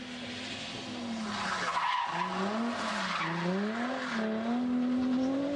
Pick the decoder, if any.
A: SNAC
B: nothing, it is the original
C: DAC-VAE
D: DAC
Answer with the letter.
B